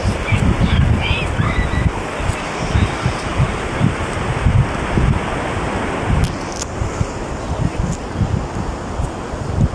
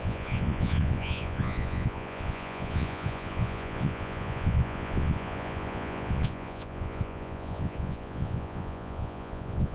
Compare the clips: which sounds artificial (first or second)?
second